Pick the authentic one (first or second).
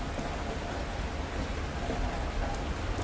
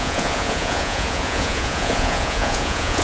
first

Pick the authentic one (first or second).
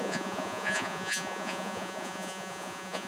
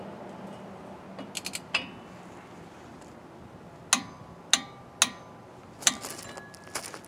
second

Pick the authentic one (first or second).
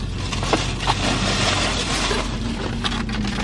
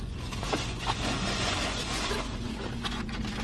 first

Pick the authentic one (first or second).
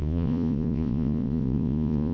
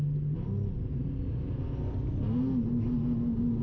second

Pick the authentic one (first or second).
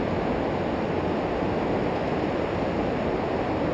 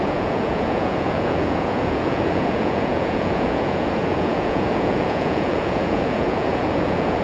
first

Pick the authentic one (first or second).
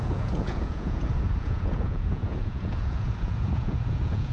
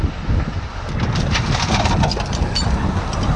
second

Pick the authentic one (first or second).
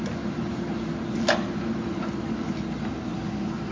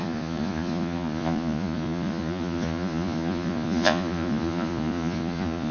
first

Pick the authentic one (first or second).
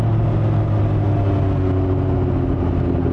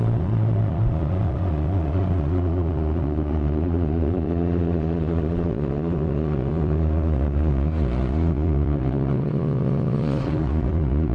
first